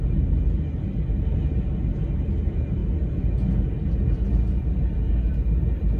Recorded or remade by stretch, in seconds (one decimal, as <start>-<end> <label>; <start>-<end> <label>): 0.0-6.0 recorded